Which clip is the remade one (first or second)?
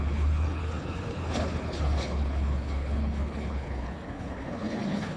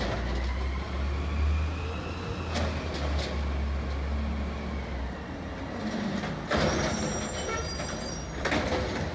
first